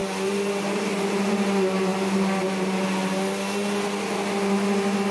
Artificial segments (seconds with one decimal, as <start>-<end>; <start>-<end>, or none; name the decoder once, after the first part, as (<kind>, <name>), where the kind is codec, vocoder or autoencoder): none